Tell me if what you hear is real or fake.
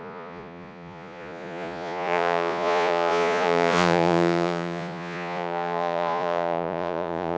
fake